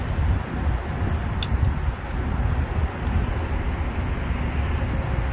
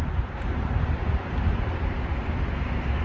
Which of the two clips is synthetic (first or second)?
second